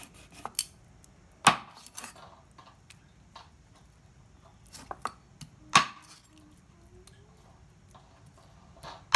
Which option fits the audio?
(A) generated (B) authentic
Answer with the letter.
B